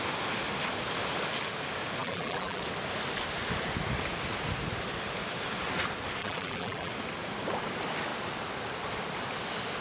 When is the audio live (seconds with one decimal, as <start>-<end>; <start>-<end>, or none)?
0.0-2.0; 2.6-6.2; 6.9-9.8